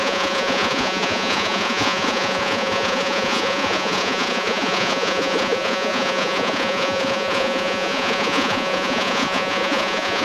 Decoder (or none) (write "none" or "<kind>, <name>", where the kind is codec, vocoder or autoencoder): vocoder, Vocos